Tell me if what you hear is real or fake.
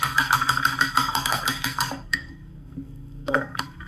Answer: fake